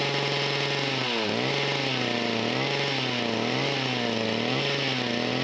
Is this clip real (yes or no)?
yes